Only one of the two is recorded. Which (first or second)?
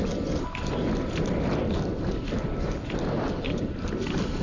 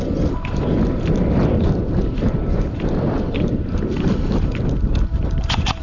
first